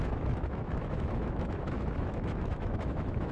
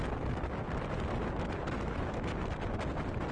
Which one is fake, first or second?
first